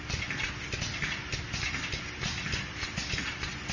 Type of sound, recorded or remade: recorded